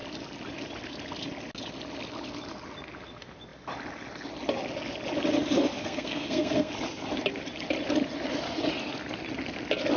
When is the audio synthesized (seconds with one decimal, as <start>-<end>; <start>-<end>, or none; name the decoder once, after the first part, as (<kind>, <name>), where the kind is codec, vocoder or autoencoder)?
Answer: 5.8-6.7 (codec, SNAC)